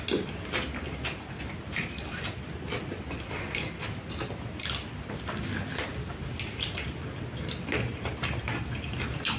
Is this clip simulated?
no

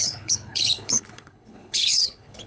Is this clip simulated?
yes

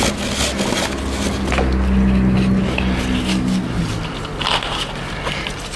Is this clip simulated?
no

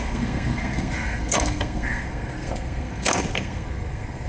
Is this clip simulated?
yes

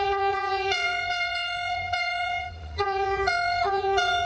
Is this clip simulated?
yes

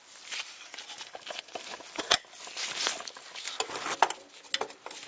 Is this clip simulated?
no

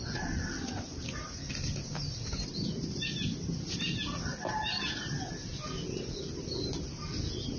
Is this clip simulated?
no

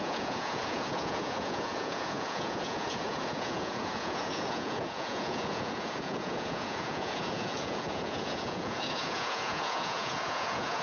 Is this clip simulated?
yes